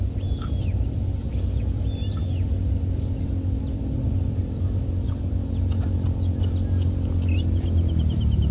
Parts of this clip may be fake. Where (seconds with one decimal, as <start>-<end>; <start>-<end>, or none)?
none